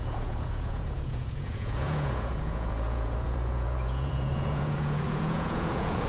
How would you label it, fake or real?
fake